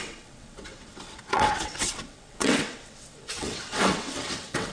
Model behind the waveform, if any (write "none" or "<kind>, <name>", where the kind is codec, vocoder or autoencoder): vocoder, WaveNeXt